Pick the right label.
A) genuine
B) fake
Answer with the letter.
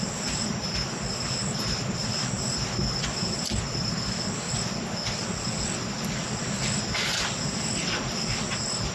A